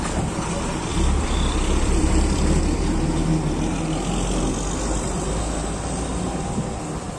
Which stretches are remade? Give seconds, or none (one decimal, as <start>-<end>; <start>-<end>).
0.9-2.6